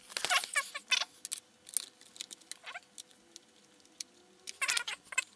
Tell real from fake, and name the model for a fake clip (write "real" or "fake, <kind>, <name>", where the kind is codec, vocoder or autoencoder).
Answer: real